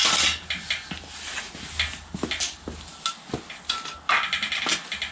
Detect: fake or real real